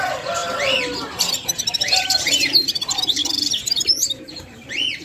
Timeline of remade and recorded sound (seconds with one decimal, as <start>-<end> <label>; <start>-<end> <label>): 0.0-5.0 remade